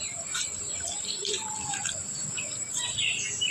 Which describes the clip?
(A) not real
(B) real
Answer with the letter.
A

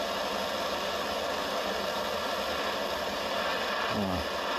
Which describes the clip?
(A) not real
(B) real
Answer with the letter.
B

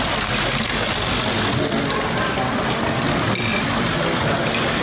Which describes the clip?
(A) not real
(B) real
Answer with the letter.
B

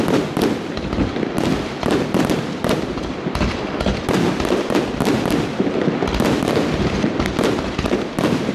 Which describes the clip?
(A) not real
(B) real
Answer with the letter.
B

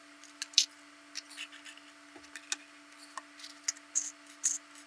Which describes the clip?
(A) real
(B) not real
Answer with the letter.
A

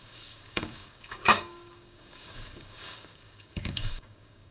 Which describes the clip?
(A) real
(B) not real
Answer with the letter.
B